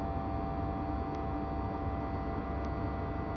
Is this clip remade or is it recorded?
recorded